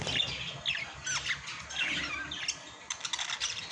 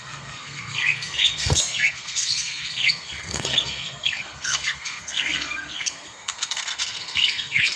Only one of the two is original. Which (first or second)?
first